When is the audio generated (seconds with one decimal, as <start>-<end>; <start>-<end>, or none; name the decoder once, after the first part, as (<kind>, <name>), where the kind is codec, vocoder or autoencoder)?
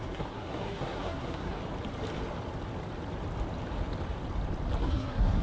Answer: 0.0-1.6 (codec, SNAC); 4.8-5.4